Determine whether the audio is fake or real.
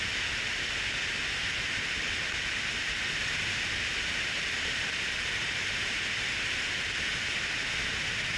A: real